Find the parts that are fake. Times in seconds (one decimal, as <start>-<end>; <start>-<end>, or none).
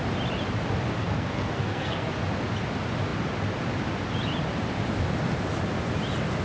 1.0-2.1